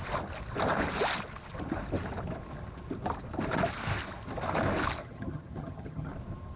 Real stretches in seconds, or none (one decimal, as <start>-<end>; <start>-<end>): 0.0-5.0; 6.1-6.6

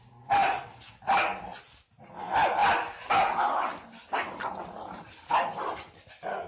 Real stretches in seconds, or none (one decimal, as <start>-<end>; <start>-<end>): 0.0-6.5

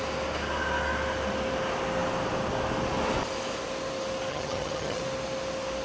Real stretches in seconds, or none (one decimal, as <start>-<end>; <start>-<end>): 0.0-4.3; 5.0-5.8